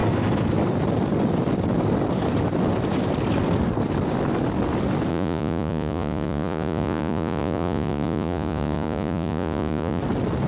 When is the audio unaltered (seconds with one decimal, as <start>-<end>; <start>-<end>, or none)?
0.0-5.1; 10.0-10.5